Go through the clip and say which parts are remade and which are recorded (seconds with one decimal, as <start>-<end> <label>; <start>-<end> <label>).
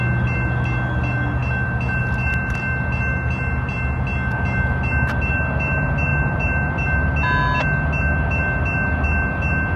0.0-9.8 recorded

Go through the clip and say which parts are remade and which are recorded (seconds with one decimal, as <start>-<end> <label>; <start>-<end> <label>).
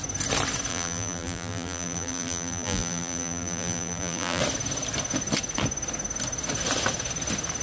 0.0-0.7 recorded; 0.7-4.4 remade; 4.4-7.6 recorded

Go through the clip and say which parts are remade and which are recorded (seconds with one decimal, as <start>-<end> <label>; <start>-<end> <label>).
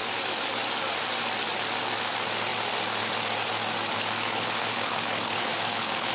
0.0-3.9 recorded; 3.9-6.1 remade